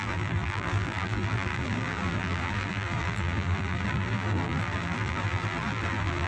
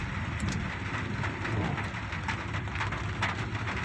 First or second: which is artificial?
first